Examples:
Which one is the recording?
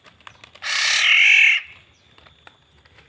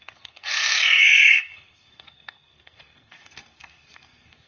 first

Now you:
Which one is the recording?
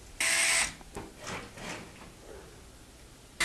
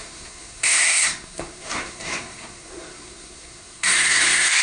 first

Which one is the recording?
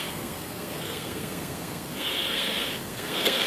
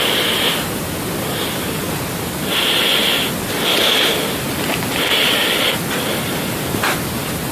second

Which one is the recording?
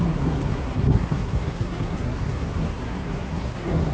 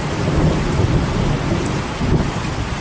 second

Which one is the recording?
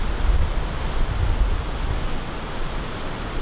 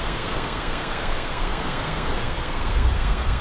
first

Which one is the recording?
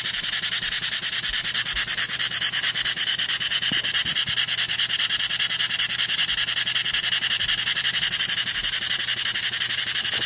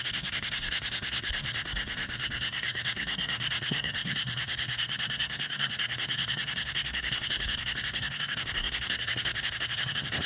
first